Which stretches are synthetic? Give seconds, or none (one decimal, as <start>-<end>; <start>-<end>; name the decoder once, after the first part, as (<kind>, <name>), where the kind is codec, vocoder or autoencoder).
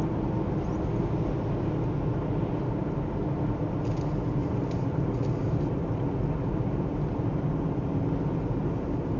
none